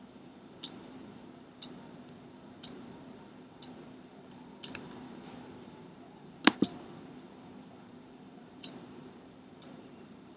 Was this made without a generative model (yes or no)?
no